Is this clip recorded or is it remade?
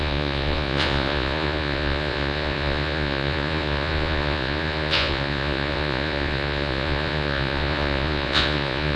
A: remade